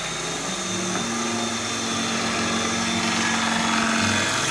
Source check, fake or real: real